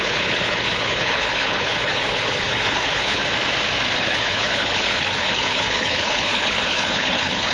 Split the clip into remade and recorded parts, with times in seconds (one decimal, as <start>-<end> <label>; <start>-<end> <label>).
0.0-3.2 remade; 3.2-4.0 recorded; 4.0-7.5 remade